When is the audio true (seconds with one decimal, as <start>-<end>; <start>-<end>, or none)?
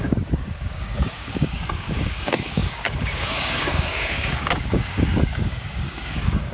none